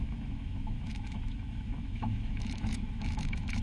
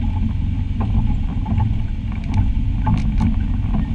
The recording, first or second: second